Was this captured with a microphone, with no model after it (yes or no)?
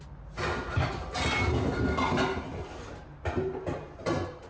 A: yes